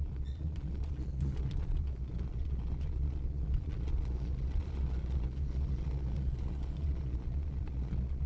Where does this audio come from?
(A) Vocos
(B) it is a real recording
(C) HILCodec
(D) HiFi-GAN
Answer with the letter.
A